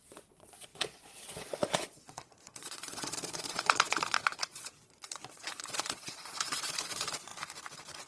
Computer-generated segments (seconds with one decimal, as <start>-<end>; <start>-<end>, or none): 0.0-7.3